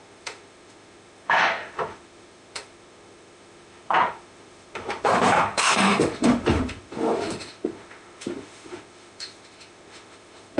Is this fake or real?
fake